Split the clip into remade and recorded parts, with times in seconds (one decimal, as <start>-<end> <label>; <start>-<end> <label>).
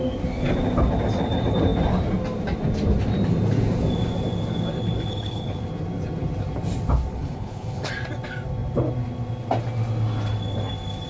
0.0-5.1 recorded; 5.1-5.6 remade; 5.6-7.1 recorded; 7.1-7.9 remade; 7.9-11.1 recorded